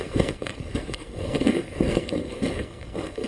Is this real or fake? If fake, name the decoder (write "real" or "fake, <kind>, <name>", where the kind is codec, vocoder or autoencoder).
fake, codec, SNAC